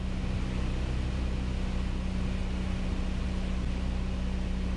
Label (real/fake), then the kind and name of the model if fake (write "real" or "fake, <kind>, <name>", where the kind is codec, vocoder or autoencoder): real